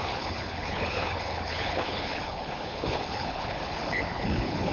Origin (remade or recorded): remade